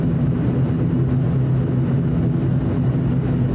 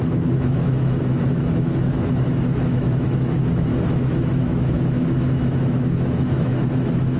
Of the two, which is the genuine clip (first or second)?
first